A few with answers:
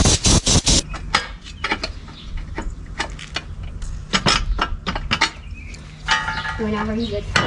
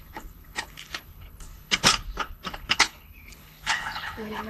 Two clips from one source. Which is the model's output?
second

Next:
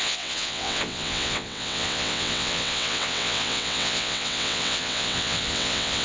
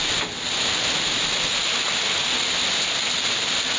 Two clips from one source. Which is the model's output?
first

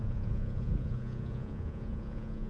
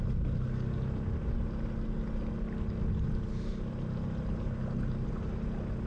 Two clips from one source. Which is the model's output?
first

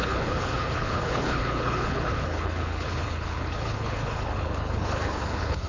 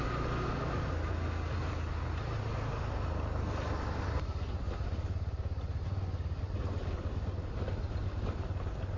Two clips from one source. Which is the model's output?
first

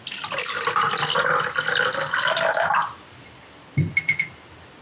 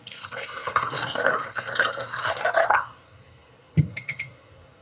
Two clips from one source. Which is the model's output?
second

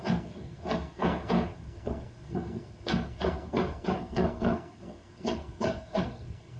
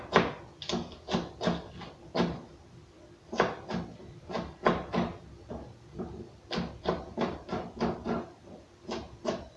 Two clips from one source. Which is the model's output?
first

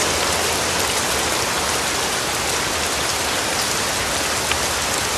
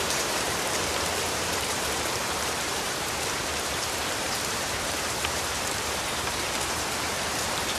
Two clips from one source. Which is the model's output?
second